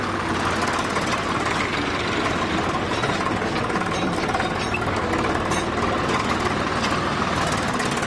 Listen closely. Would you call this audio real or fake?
real